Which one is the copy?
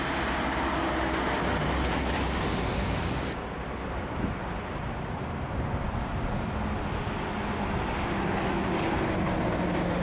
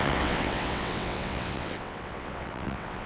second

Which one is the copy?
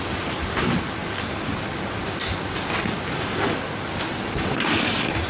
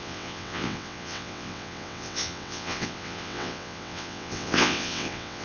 second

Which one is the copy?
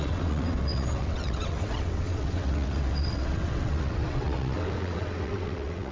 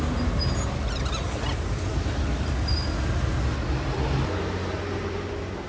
first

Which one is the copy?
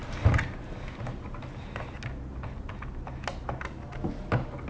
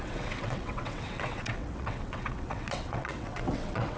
second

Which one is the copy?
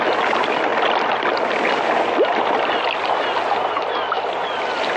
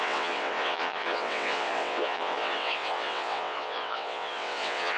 second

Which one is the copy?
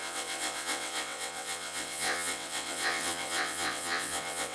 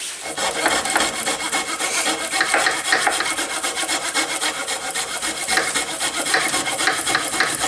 first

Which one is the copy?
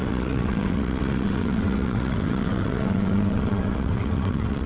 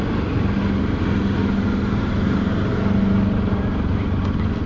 first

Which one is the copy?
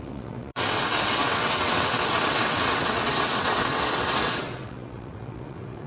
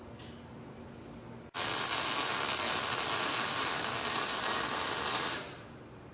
first